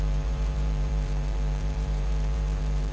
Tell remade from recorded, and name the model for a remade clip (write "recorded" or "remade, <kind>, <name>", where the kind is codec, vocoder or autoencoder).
remade, vocoder, BigVGAN v2